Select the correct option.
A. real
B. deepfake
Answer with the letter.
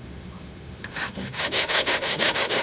B